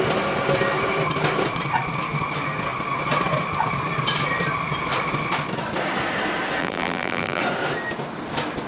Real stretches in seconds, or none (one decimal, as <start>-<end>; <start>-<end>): 0.0-6.6; 7.4-8.7

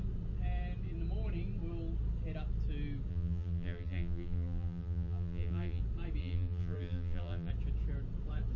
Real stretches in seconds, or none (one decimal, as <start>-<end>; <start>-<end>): 0.0-3.1; 5.8-6.2; 7.5-8.6